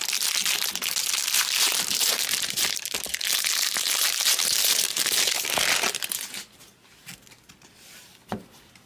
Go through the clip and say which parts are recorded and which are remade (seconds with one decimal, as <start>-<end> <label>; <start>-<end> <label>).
0.0-1.2 recorded; 1.2-5.6 remade; 5.6-8.1 recorded; 8.1-8.9 remade